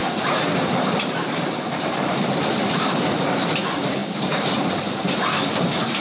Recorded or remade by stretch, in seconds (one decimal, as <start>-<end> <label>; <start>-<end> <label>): 0.0-3.6 remade; 3.6-4.0 recorded; 4.0-5.2 remade; 5.2-6.0 recorded